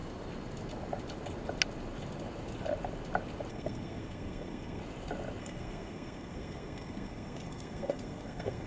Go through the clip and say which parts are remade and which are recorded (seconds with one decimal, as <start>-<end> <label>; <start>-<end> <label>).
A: 0.0-3.5 recorded; 3.5-4.8 remade; 4.8-5.4 recorded; 5.4-8.7 remade